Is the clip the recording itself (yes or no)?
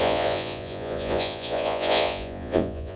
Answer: no